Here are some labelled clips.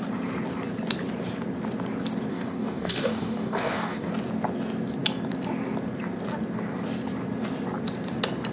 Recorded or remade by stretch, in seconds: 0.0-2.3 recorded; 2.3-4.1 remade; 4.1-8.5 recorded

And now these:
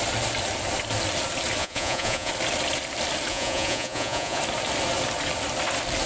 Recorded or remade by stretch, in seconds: 0.0-1.6 recorded; 1.6-2.3 remade; 2.3-3.3 recorded; 3.3-4.4 remade; 4.4-6.1 recorded

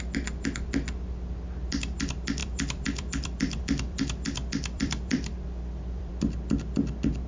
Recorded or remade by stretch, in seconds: 0.0-2.4 recorded; 2.4-6.1 remade; 6.1-7.3 recorded

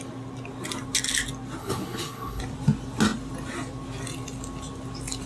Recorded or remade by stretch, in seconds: 0.0-1.6 recorded; 1.6-2.4 remade; 2.4-5.3 recorded

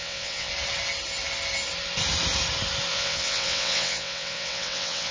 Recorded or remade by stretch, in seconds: 0.0-0.5 remade; 0.5-2.9 recorded; 2.9-5.1 remade

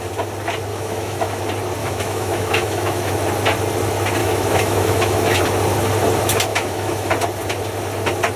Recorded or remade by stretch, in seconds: 0.0-0.7 recorded; 0.7-1.4 remade; 1.4-1.8 recorded; 1.8-3.1 remade; 3.1-4.2 recorded; 4.2-5.4 remade; 5.4-6.5 recorded; 6.5-7.1 remade; 7.1-8.4 recorded